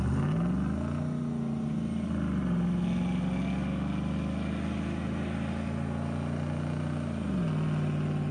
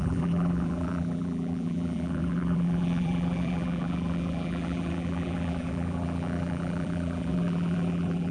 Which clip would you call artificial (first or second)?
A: second